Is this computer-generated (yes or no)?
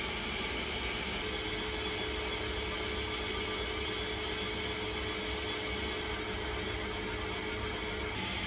no